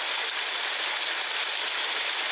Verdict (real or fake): real